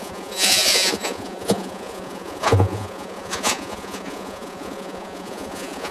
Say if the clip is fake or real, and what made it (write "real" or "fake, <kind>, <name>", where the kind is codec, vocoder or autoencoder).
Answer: fake, vocoder, Vocos